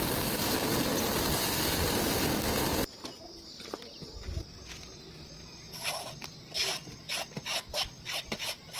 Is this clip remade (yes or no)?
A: no